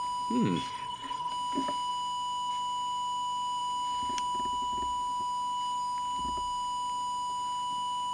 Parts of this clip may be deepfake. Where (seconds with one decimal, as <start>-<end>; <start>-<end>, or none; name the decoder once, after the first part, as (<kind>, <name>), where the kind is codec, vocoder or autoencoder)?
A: 0.7-1.3 (codec, SNAC)